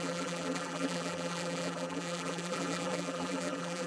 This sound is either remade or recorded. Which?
remade